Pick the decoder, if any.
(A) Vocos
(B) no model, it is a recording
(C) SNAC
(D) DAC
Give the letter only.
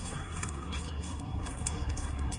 C